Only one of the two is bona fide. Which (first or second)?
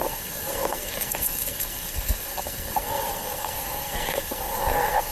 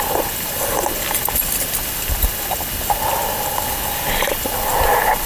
second